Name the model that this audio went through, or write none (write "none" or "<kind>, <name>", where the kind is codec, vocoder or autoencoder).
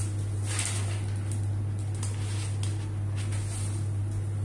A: none